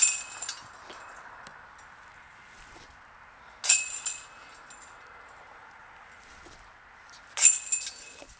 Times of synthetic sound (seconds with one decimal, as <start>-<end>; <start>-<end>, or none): none